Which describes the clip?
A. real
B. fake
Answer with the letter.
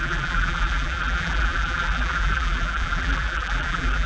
B